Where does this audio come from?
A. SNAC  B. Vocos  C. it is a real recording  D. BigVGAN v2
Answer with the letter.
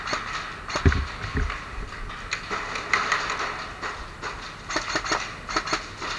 C